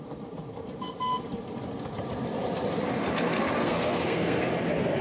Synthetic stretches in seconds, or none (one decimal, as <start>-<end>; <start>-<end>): 3.6-4.5